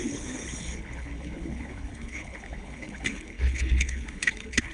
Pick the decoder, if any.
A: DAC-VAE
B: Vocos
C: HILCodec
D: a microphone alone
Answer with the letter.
C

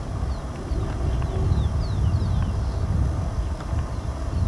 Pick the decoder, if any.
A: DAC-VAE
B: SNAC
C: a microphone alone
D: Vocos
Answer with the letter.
C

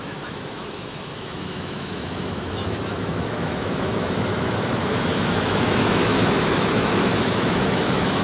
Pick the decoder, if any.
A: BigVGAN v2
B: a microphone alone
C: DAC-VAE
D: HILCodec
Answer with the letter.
C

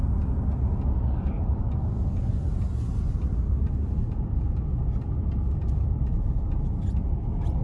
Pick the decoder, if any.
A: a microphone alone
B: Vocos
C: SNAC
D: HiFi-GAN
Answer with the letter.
A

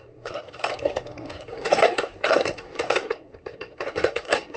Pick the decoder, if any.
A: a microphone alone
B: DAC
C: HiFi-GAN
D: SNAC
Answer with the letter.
D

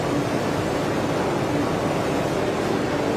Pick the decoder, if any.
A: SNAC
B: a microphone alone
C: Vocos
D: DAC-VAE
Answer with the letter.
B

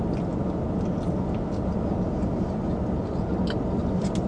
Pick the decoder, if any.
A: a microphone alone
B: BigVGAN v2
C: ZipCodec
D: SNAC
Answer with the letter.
A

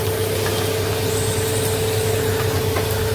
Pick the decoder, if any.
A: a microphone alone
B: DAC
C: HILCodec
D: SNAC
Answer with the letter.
A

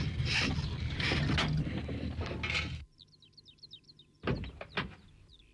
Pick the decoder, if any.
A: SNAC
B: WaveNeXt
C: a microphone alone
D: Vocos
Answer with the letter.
C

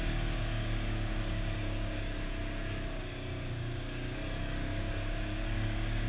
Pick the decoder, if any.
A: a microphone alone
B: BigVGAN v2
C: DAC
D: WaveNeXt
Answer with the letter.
C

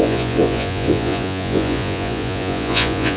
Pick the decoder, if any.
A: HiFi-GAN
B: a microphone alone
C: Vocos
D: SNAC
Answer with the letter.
C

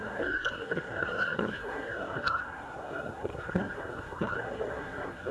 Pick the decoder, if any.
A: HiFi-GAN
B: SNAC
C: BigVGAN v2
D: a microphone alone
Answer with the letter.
B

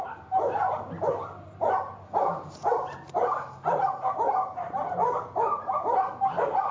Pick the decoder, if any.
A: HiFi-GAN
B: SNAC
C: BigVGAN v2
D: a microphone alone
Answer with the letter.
D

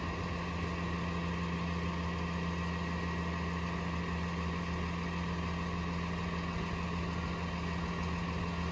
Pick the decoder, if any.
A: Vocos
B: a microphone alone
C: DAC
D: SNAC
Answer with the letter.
B